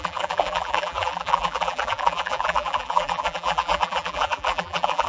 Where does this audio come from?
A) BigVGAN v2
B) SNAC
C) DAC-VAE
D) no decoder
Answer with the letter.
A